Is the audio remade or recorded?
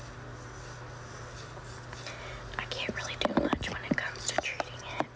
recorded